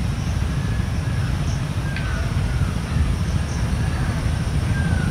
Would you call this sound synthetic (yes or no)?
no